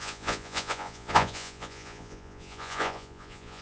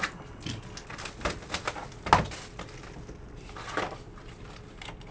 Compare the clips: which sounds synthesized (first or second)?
first